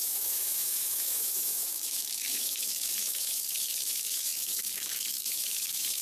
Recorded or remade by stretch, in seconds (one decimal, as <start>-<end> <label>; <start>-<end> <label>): 0.0-6.0 remade